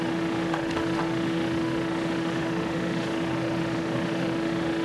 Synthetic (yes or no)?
yes